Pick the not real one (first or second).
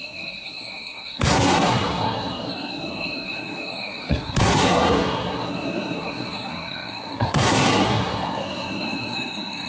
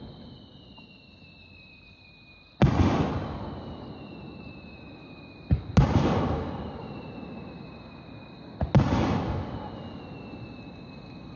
first